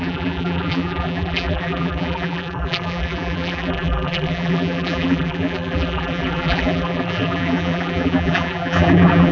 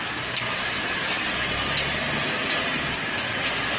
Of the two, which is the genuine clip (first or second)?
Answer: second